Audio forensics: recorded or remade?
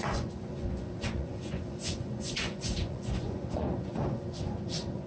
remade